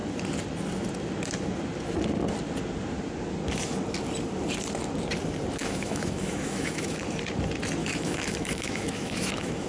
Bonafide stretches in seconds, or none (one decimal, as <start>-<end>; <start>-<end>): 0.0-5.6; 7.0-7.8